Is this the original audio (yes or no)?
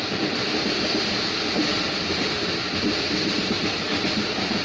yes